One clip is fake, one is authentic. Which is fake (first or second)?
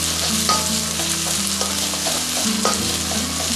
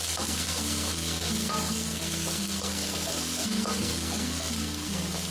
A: second